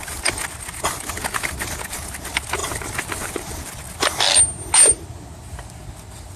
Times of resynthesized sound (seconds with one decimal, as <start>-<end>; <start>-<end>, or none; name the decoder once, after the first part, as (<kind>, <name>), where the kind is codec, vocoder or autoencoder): 2.6-3.5 (vocoder, BigVGAN v2)